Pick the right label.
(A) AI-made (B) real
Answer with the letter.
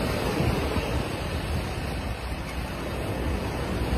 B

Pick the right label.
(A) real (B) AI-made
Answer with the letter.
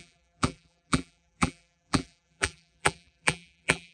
B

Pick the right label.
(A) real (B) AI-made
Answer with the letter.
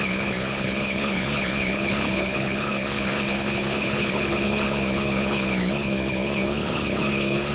B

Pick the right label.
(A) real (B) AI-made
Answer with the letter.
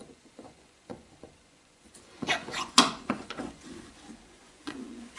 B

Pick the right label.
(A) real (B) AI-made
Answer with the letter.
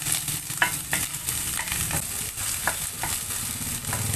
A